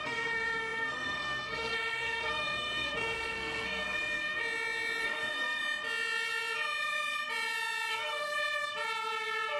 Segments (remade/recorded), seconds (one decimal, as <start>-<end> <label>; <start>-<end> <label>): 0.0-4.4 remade; 4.4-5.0 recorded; 5.0-5.6 remade; 5.6-7.9 recorded; 7.9-8.3 remade; 8.3-9.6 recorded